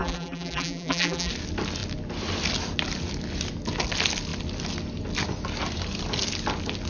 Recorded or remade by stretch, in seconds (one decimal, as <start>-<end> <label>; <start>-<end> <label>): 0.0-1.3 remade; 1.3-6.9 recorded

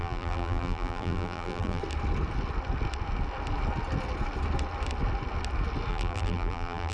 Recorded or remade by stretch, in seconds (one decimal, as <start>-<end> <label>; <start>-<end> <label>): 0.0-1.8 remade; 1.8-5.9 recorded; 5.9-6.9 remade

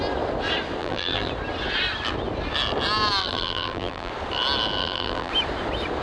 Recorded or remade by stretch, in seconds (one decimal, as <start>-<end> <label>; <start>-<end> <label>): 0.0-0.8 recorded; 0.8-1.3 remade; 1.3-3.2 recorded; 3.2-4.1 remade; 4.1-4.8 recorded; 4.8-5.3 remade; 5.3-6.0 recorded

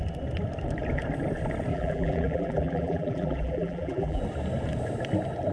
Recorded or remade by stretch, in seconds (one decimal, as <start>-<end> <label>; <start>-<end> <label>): 0.0-1.7 recorded; 1.7-4.2 remade; 4.2-5.5 recorded

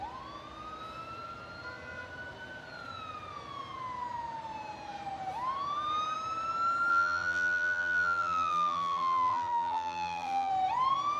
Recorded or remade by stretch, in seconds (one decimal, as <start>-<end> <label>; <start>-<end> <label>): 0.0-6.9 recorded; 6.9-10.5 remade; 10.5-11.2 recorded

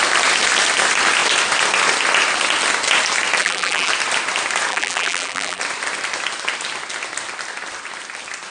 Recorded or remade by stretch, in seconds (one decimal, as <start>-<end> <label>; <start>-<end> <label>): 0.0-3.4 recorded; 3.4-3.9 remade; 3.9-4.7 recorded; 4.7-5.6 remade; 5.6-8.5 recorded

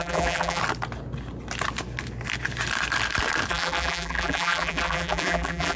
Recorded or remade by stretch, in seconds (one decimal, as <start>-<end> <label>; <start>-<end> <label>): 0.0-0.6 remade; 0.6-3.5 recorded; 3.5-5.8 remade

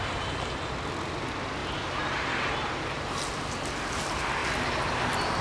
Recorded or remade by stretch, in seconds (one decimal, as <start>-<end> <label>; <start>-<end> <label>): 0.0-5.4 recorded